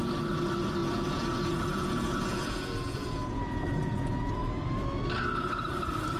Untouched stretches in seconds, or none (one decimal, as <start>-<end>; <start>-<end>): 0.0-0.8; 4.5-6.2